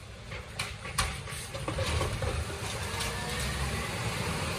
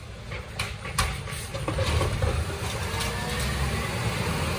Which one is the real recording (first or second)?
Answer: second